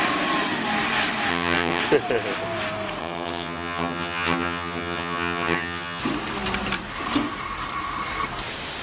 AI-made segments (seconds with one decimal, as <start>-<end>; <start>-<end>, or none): 1.3-1.8; 3.0-6.0